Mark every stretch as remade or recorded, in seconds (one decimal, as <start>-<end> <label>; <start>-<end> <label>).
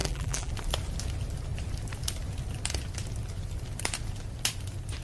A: 0.0-0.5 remade; 0.5-5.0 recorded